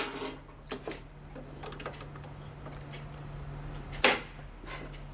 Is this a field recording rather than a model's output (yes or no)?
yes